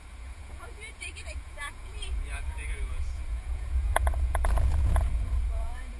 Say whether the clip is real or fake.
fake